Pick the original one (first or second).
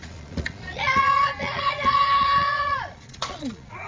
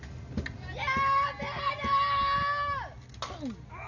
second